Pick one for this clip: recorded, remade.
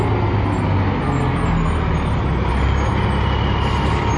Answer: recorded